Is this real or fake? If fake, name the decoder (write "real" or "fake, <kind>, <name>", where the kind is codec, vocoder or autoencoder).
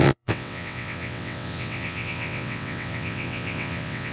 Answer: fake, vocoder, WaveNeXt